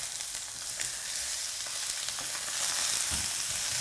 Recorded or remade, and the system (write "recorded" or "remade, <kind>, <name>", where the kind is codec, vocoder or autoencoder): recorded